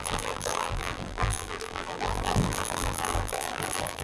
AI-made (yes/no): yes